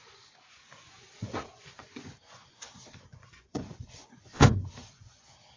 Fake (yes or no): yes